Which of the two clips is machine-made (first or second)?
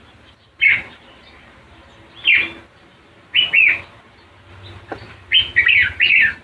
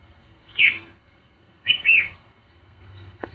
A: second